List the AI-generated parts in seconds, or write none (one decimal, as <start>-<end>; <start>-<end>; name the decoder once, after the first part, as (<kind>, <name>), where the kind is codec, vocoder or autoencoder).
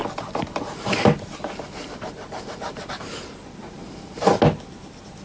0.0-3.1 (vocoder, BigVGAN v2); 3.6-4.3